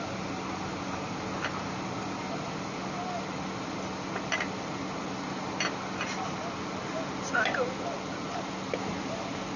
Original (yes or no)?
yes